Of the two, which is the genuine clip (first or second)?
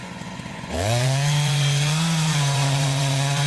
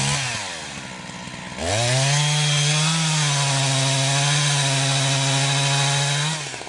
second